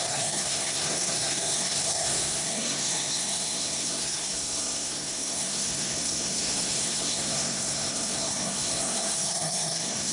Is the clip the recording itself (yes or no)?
no